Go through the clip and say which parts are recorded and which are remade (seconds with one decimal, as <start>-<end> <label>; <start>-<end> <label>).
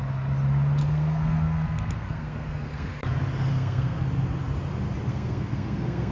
0.0-0.8 recorded; 0.8-3.1 remade; 3.1-3.5 recorded; 3.5-4.0 remade; 4.0-5.1 recorded; 5.1-6.1 remade